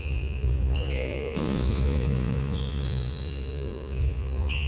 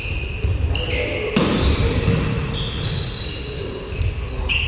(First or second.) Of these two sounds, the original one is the second